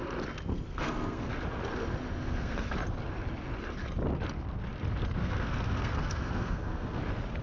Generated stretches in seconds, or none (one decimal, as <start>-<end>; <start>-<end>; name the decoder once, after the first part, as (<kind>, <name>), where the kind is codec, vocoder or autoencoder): 0.5-1.3 (codec, SNAC); 2.2-2.7; 5.2-7.0